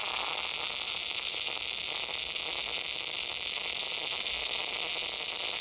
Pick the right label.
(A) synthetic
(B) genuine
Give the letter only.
B